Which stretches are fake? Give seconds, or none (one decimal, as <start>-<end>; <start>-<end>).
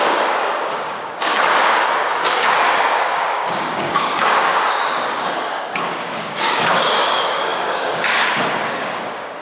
0.0-9.4